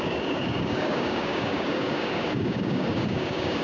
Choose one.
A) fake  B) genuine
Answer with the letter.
A